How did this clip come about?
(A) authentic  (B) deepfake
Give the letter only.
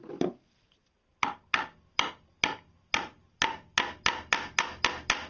A